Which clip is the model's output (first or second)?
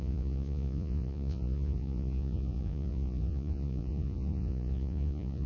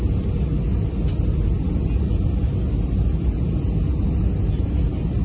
first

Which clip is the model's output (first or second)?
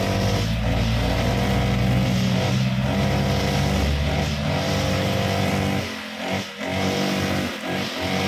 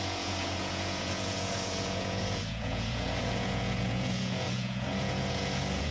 second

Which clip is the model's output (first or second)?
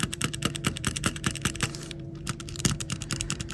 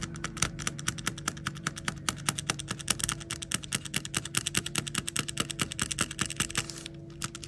first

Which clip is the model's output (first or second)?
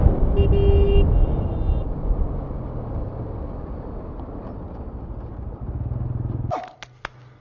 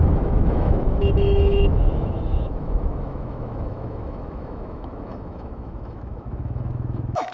second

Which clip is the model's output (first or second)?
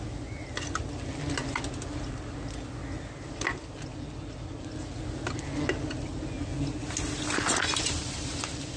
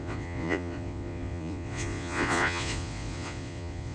second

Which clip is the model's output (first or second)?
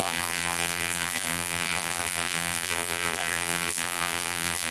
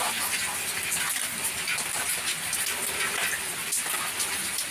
first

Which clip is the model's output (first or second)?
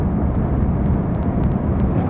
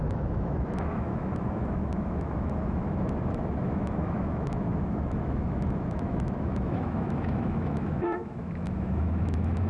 second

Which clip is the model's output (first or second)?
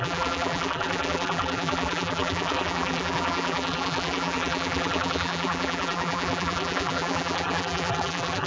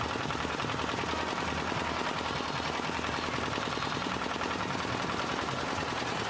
first